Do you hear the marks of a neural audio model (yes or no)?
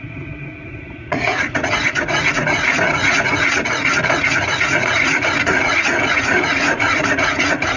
yes